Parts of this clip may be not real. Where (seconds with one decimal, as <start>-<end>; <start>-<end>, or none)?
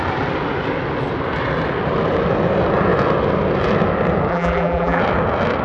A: 4.3-5.0